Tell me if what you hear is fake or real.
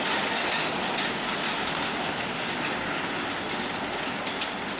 real